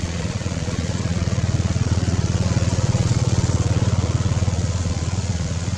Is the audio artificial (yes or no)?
yes